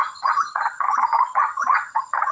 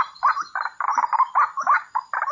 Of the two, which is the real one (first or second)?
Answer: second